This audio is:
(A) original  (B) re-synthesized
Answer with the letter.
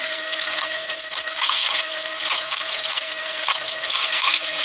B